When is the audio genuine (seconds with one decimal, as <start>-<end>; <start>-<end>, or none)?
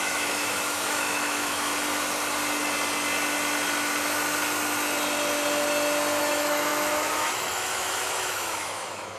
1.7-6.2